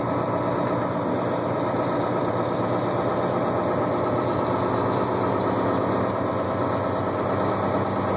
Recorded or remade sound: recorded